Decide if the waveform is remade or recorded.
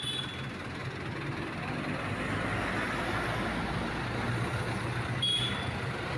recorded